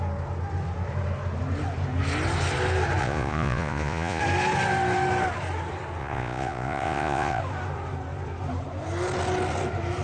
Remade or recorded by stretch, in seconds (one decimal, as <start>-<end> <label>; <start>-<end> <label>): 0.0-3.0 recorded; 3.0-4.2 remade; 4.2-6.0 recorded; 6.0-7.4 remade; 7.4-10.0 recorded

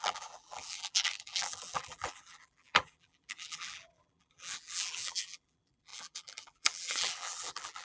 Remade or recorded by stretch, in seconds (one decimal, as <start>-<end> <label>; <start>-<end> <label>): 0.0-7.8 remade

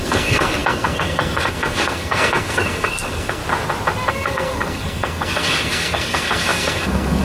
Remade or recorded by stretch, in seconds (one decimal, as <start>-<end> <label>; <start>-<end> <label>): 0.0-3.4 remade; 3.4-4.1 recorded; 4.1-7.2 remade